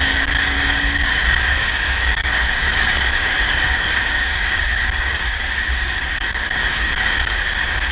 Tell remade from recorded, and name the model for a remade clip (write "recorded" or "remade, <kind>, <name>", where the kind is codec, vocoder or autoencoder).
remade, codec, DAC